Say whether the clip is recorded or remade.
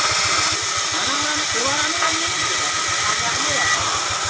recorded